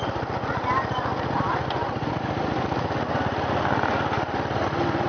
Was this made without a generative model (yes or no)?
yes